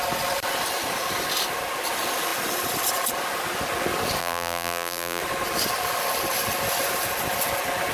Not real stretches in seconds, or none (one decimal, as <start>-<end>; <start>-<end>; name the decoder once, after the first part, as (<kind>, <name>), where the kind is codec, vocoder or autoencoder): 4.2-5.2 (vocoder, BigVGAN v2)